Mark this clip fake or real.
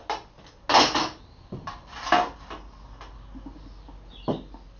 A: real